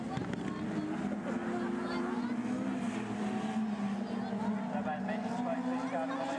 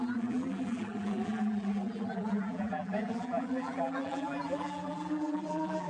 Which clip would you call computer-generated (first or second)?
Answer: second